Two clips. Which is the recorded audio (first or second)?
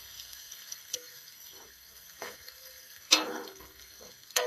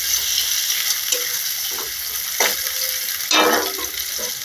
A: second